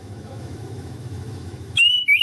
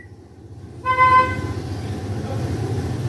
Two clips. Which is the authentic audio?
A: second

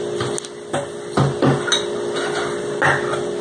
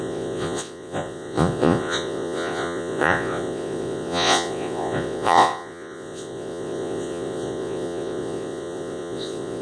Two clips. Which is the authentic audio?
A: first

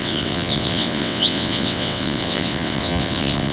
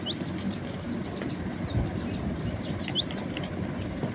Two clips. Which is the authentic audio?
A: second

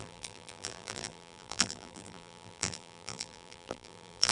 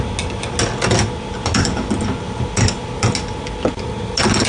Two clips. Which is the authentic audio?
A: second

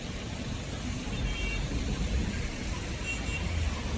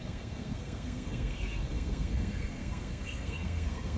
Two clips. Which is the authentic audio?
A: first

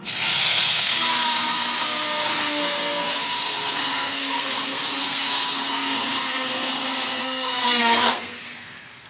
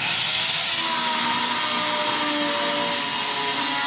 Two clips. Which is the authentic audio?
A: second